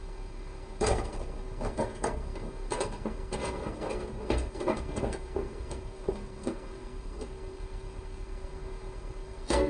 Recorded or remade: remade